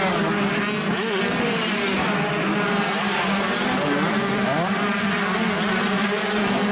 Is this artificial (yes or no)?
no